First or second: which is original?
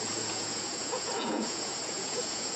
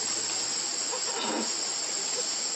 second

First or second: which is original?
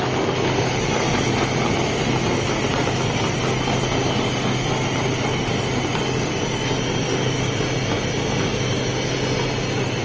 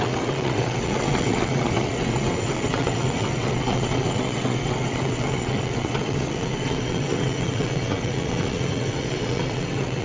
first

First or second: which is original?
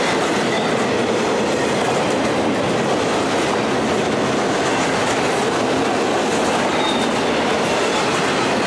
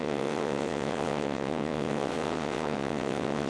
first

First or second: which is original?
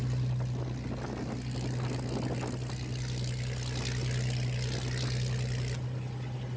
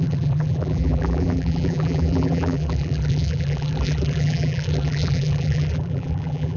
first